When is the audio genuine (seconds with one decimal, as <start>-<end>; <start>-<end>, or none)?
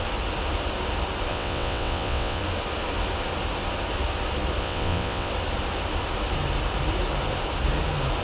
0.0-1.3; 2.4-4.6; 5.3-8.2